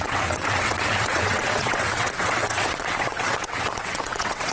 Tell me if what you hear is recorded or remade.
remade